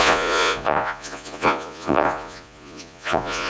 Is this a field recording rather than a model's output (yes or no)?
no